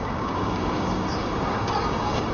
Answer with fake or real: fake